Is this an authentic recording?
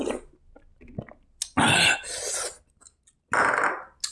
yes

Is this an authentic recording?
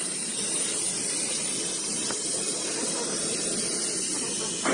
yes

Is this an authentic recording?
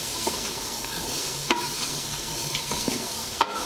no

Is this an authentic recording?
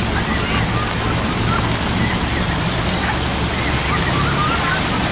yes